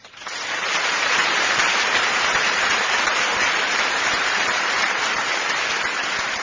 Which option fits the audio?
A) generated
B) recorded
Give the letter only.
A